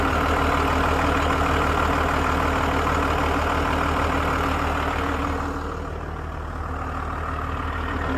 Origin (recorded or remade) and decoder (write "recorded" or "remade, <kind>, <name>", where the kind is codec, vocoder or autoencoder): recorded